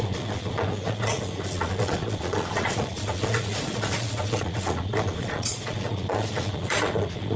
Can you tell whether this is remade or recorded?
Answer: remade